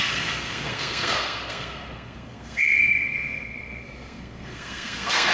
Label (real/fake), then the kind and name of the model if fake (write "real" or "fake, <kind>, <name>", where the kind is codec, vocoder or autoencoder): fake, codec, SNAC